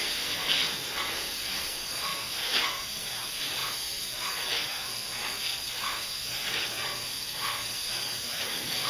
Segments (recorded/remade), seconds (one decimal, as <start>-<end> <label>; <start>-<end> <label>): 0.0-8.9 remade